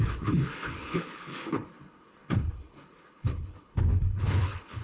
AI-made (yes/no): yes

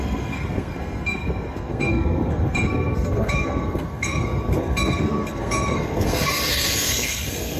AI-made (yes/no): yes